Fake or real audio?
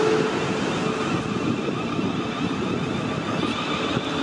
real